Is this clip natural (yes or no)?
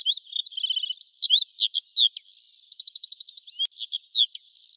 yes